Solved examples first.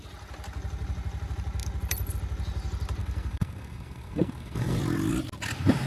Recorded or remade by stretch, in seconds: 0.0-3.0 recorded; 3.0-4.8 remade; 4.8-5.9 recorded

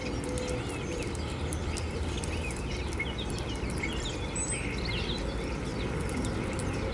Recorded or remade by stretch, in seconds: 0.0-6.9 recorded

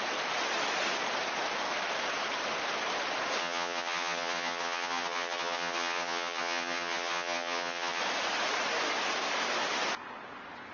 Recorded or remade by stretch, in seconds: 0.0-3.4 recorded; 3.4-8.0 remade; 8.0-10.7 recorded

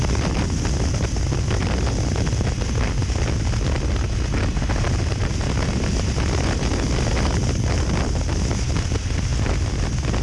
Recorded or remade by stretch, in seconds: 0.0-10.2 recorded

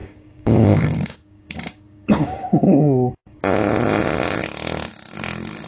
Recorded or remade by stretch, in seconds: 0.0-3.4 remade; 3.4-5.7 recorded

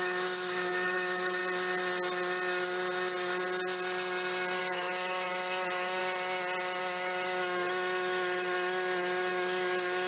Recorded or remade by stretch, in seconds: 0.0-1.4 remade; 1.4-4.6 recorded; 4.6-6.0 remade; 6.0-6.8 recorded; 6.8-10.1 remade